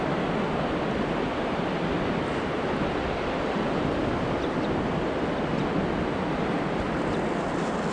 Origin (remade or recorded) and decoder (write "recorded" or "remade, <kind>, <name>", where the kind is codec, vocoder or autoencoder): recorded